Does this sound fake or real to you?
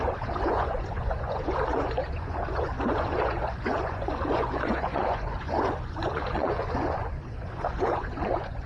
fake